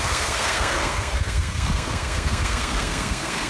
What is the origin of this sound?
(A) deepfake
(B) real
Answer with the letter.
A